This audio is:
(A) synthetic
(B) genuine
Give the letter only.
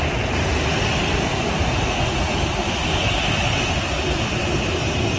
B